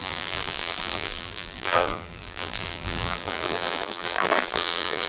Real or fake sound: fake